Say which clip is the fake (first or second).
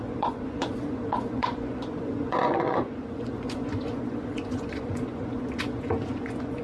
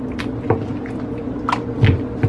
first